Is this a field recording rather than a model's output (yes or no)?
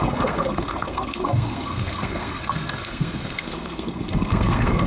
no